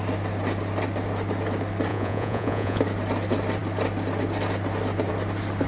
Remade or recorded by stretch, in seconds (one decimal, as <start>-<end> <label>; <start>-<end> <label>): 0.0-1.9 recorded; 1.9-2.8 remade; 2.8-5.7 recorded